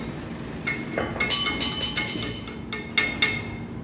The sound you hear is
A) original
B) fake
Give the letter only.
A